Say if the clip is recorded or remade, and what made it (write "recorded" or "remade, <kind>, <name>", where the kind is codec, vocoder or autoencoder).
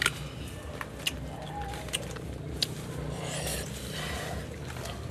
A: recorded